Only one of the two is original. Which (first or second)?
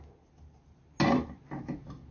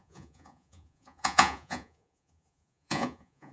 first